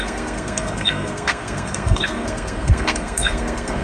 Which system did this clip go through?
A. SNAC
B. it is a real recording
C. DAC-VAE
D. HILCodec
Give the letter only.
A